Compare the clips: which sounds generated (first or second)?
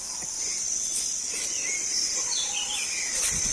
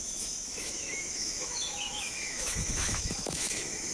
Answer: second